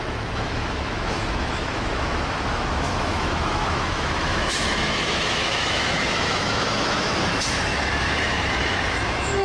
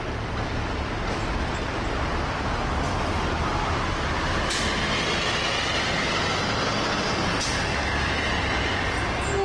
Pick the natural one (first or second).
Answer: second